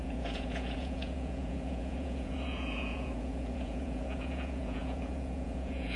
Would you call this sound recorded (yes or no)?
no